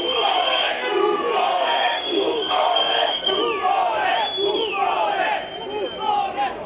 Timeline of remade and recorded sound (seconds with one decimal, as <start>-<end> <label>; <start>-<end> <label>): 0.0-3.4 remade; 3.4-6.7 recorded